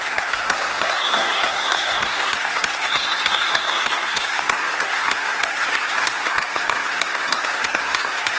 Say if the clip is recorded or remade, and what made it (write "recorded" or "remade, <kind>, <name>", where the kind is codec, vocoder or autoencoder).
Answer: remade, codec, SNAC